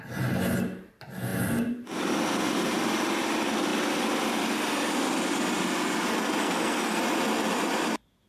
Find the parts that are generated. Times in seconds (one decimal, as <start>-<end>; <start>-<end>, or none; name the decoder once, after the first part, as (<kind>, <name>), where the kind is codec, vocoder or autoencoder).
6.4-7.0 (codec, SNAC)